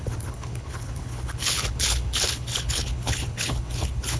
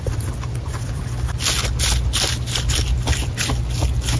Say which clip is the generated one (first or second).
first